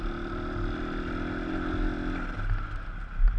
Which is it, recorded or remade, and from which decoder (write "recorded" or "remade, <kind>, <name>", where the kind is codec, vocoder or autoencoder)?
recorded